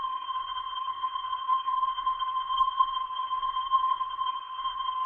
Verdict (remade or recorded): remade